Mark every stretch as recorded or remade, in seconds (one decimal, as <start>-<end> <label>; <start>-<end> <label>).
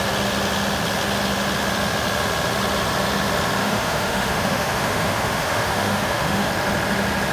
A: 0.0-3.6 recorded; 3.6-6.5 remade; 6.5-7.3 recorded